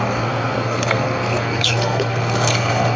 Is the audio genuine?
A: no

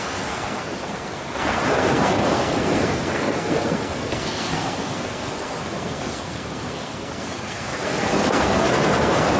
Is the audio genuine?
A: no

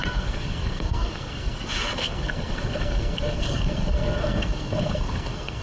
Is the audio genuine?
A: no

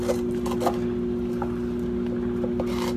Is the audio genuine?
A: yes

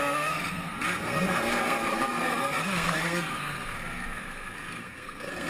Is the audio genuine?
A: no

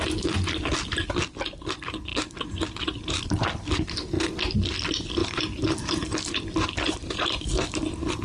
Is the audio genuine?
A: yes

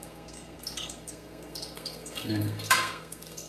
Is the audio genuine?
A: no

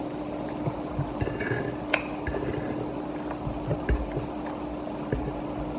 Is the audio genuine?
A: yes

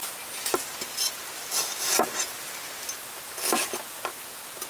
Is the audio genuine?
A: yes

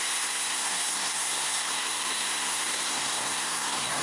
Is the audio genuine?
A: no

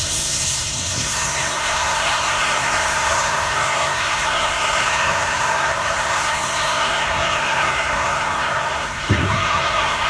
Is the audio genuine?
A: no